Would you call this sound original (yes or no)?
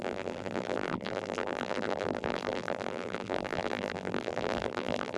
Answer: no